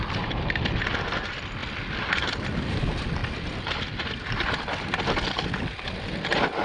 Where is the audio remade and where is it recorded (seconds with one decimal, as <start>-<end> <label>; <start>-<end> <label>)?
0.0-6.6 recorded